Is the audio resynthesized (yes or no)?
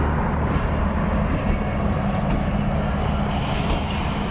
no